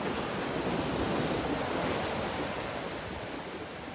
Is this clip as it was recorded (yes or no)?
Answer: yes